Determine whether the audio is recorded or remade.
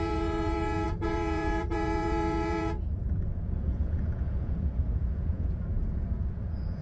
remade